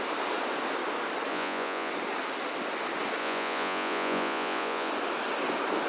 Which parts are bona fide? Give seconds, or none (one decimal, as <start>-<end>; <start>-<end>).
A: 0.0-1.3; 1.9-3.2; 4.9-5.9